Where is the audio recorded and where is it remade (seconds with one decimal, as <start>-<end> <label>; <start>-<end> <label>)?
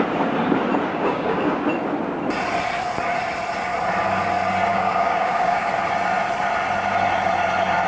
0.0-0.9 recorded; 0.9-1.6 remade; 1.6-4.7 recorded; 4.7-5.7 remade; 5.7-7.9 recorded